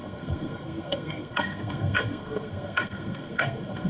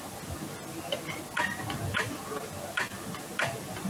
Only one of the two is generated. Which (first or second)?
first